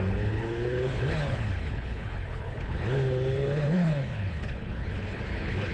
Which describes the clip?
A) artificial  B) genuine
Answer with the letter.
A